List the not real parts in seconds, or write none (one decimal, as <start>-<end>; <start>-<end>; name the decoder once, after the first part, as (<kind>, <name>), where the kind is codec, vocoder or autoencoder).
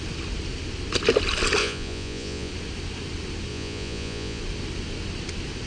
1.6-2.5 (vocoder, Vocos); 3.5-4.4